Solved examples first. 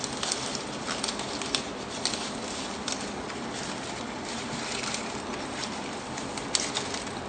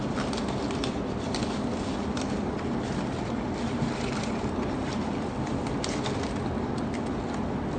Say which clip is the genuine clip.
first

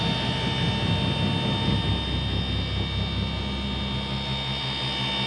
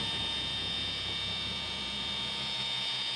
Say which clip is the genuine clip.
first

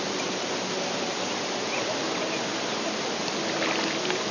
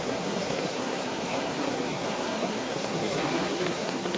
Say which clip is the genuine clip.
first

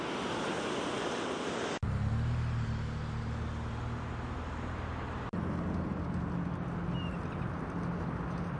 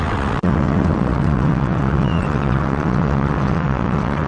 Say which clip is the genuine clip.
first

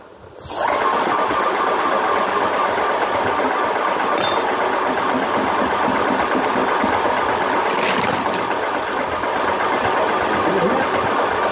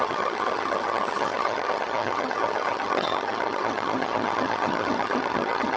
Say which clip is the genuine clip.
first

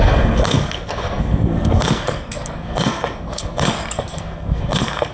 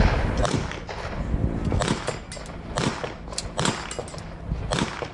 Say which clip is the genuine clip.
second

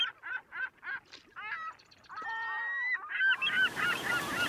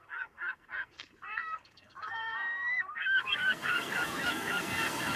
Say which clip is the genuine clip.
first